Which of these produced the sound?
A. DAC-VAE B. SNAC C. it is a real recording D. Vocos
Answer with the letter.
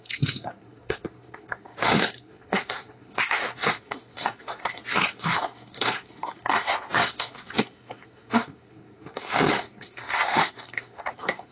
B